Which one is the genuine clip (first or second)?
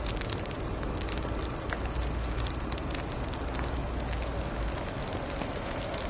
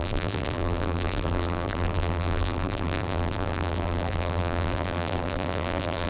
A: first